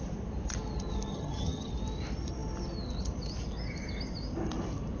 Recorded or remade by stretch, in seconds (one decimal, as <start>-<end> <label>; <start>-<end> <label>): 0.0-1.1 recorded; 1.1-1.7 remade; 1.7-5.0 recorded

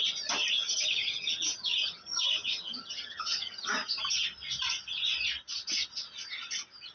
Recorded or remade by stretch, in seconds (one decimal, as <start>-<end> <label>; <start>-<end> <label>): 0.0-0.7 recorded; 0.7-3.7 remade; 3.7-6.9 recorded